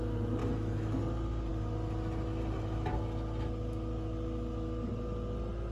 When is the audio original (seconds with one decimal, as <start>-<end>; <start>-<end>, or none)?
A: 0.0-0.4; 1.0-5.7